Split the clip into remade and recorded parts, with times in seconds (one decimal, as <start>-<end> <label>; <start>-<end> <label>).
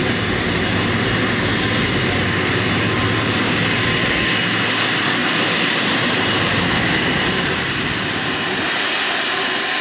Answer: 0.0-5.2 recorded; 5.2-9.8 remade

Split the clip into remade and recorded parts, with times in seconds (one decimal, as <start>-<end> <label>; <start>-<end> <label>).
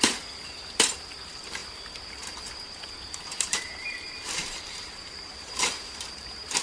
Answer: 0.0-6.6 remade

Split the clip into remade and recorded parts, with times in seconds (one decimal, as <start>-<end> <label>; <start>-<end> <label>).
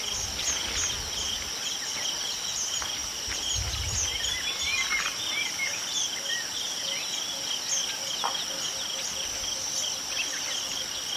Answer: 0.0-5.1 recorded; 5.1-6.2 remade; 6.2-11.2 recorded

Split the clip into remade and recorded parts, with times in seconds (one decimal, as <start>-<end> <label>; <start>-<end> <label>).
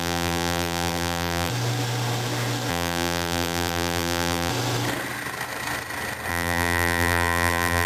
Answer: 0.0-1.5 remade; 1.5-2.7 recorded; 2.7-4.5 remade; 4.5-6.3 recorded; 6.3-7.9 remade